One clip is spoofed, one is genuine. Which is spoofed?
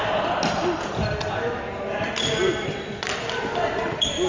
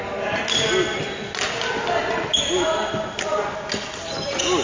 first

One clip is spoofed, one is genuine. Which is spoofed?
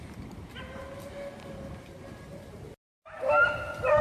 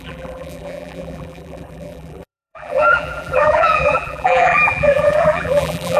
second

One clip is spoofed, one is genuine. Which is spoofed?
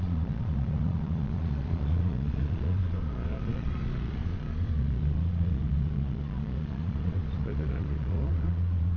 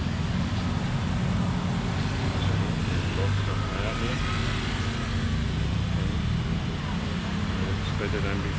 first